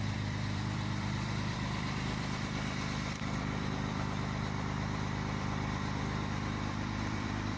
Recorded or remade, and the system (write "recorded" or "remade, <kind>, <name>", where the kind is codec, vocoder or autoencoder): remade, vocoder, BigVGAN v2